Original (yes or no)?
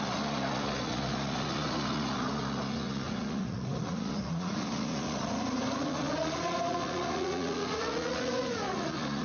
no